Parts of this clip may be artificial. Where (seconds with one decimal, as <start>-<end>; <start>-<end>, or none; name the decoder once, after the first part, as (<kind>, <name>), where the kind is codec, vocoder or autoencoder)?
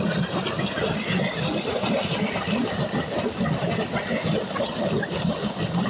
none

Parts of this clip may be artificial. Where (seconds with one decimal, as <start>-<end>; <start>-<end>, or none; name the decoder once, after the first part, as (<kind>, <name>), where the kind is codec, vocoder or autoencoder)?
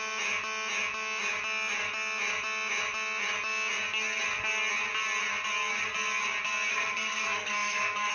6.7-8.1 (codec, SNAC)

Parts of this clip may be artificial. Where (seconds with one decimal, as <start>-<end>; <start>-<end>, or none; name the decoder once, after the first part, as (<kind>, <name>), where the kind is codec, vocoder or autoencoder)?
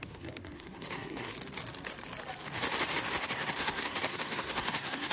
0.0-1.3 (codec, SNAC); 3.2-5.1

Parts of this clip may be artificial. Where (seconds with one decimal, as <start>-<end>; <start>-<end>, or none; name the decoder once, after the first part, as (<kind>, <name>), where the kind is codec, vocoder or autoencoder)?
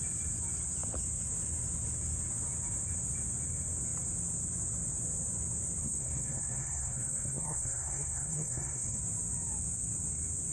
5.8-9.0 (codec, SNAC)